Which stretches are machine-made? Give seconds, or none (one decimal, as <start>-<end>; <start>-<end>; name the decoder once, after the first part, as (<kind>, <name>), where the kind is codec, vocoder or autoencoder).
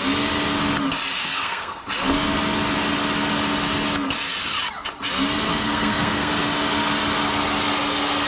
1.2-1.8 (codec, SNAC); 5.5-6.3